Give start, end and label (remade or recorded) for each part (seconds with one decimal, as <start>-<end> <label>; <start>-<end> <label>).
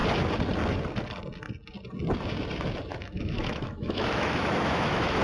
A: 0.0-2.9 recorded; 2.9-5.2 remade